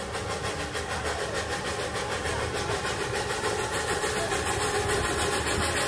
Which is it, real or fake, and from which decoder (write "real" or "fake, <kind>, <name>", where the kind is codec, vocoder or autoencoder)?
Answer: real